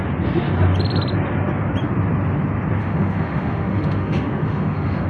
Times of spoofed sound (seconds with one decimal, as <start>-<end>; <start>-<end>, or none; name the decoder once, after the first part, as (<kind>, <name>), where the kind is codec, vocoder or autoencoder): 2.8-5.1 (autoencoder, DAC-VAE)